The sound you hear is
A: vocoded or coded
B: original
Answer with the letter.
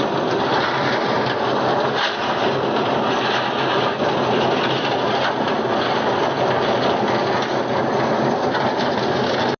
B